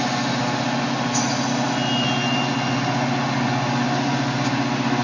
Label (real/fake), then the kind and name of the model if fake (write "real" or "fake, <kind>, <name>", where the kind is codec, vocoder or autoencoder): real